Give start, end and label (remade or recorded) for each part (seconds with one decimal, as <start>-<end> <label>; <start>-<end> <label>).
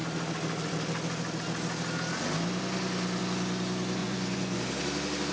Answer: 0.0-4.0 recorded; 4.0-4.6 remade; 4.6-5.3 recorded